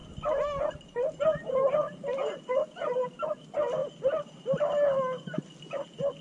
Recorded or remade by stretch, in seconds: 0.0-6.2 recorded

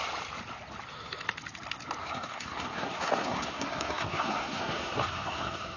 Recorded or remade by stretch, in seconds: 0.0-2.0 recorded; 2.0-5.8 remade

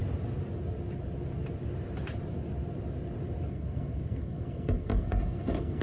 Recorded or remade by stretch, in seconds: 0.0-3.5 recorded; 3.5-5.8 remade

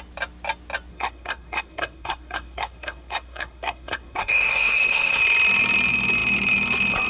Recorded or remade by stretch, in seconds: 0.0-0.9 recorded; 0.9-5.2 remade; 5.2-7.1 recorded

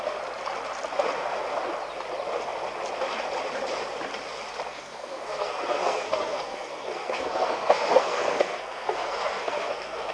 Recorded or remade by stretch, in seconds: 0.0-4.7 recorded; 4.7-10.1 remade